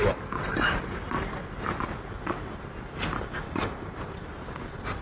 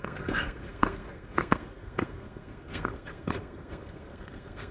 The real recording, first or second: first